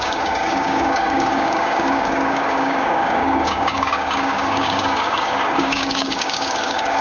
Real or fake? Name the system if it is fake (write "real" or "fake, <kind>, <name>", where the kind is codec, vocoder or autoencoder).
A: fake, codec, DAC